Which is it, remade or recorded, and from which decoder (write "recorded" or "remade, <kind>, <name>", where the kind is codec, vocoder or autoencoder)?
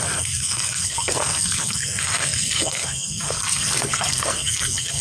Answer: remade, codec, SNAC